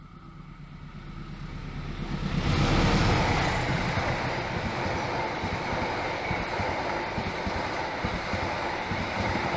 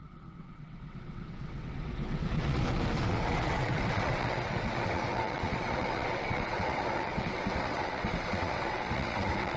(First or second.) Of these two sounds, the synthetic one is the second